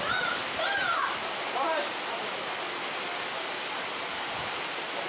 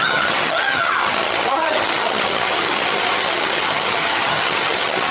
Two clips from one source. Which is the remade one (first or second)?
second